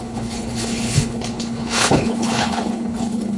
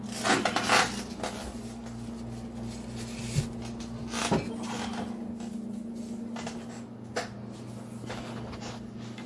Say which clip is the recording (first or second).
second